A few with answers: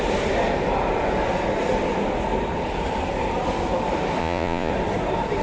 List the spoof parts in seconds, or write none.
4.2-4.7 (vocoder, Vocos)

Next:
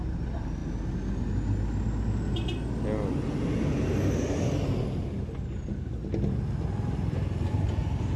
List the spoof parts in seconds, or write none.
none

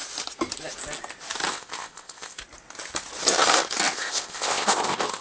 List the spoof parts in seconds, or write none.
1.5-2.4 (codec, ZipCodec); 3.9-5.2